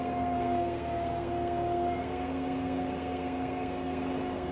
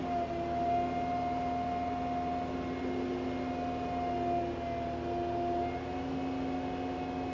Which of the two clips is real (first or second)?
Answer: second